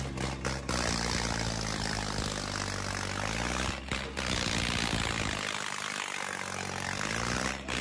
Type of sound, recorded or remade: recorded